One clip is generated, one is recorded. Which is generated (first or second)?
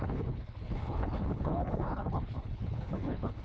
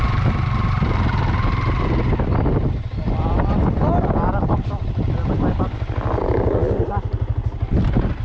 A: first